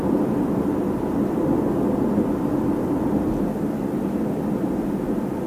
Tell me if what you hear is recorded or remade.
recorded